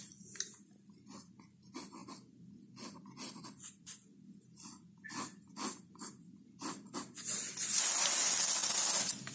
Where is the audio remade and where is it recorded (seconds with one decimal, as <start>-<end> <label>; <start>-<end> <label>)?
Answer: 0.0-9.3 recorded